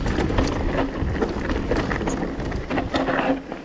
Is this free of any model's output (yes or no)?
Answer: yes